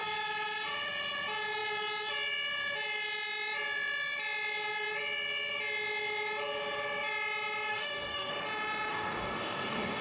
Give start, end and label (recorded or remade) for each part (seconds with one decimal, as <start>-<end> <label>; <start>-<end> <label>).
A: 0.0-7.7 recorded; 7.7-8.3 remade; 8.3-8.9 recorded; 8.9-10.0 remade

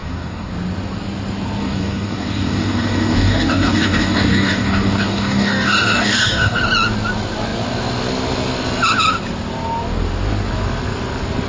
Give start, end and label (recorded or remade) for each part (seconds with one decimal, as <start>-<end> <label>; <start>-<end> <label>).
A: 0.0-0.5 remade; 0.5-1.6 recorded; 1.6-6.6 remade; 6.6-11.5 recorded

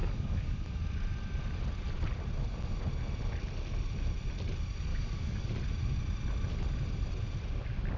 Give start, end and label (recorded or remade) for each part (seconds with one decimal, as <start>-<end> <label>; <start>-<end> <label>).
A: 0.0-0.8 remade; 0.8-4.9 recorded; 4.9-5.5 remade; 5.5-8.0 recorded

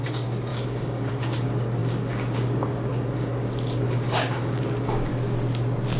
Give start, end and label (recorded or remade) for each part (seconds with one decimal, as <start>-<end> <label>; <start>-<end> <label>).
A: 0.0-5.1 remade; 5.1-6.0 recorded

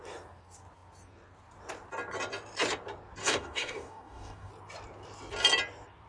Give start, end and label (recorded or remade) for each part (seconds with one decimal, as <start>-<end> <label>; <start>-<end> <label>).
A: 0.0-3.2 recorded; 3.2-4.5 remade; 4.5-6.1 recorded

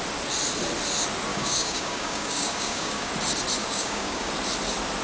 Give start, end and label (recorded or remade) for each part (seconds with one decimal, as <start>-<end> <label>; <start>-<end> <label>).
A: 0.0-1.3 recorded; 1.3-3.1 remade; 3.1-3.6 recorded; 3.6-4.3 remade; 4.3-5.0 recorded

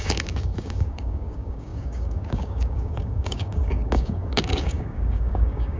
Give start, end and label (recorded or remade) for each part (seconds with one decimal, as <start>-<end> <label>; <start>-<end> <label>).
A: 0.0-5.8 remade